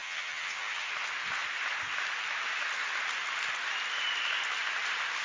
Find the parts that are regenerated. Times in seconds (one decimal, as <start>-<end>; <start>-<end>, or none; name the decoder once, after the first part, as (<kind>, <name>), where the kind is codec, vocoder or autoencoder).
0.0-0.9 (vocoder, HiFi-GAN)